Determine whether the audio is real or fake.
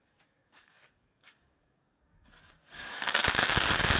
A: fake